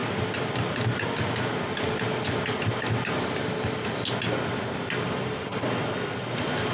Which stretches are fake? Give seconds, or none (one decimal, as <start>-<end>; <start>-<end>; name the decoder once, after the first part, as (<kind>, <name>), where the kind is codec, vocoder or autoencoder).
none